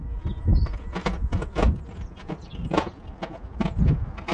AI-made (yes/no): no